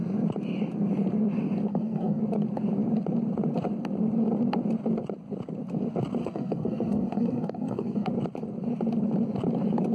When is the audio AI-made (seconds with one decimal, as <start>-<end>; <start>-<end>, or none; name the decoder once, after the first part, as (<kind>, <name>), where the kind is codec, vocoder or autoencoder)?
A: 1.7-2.2 (codec, SNAC); 6.2-8.1